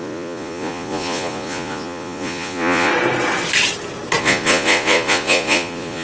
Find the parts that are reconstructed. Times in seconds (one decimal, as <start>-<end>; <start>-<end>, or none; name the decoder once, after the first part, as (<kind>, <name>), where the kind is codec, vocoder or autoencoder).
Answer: 0.0-2.9 (vocoder, Vocos); 4.2-6.0

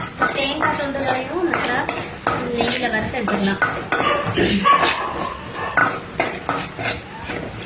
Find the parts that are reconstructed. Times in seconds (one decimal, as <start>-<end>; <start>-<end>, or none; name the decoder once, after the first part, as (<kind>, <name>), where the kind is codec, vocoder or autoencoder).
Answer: none

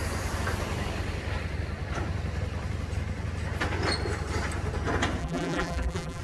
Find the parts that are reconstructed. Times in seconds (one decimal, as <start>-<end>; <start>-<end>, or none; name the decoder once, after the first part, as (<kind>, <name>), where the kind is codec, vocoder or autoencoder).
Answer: 5.2-6.2 (vocoder, BigVGAN v2)

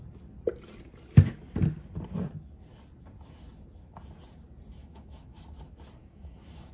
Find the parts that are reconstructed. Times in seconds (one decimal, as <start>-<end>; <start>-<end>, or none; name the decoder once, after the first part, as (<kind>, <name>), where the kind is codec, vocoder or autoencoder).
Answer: 4.8-5.4 (autoencoder, DAC-VAE); 6.0-6.7

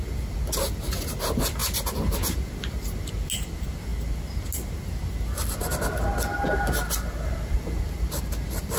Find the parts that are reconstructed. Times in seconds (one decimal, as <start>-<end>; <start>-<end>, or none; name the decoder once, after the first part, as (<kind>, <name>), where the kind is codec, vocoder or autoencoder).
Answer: none